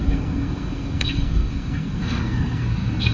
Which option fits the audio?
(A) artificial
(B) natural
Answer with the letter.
A